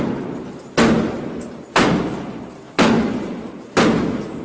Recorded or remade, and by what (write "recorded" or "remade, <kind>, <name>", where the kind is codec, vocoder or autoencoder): recorded